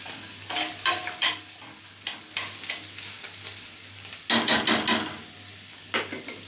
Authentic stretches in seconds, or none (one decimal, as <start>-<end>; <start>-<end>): 0.0-6.5